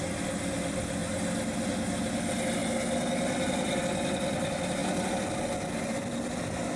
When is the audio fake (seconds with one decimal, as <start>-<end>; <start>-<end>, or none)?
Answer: none